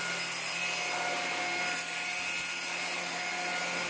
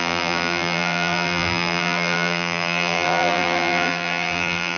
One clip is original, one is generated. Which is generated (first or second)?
second